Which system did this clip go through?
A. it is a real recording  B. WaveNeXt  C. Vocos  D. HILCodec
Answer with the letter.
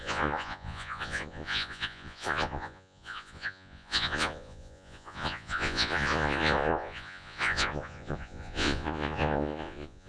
C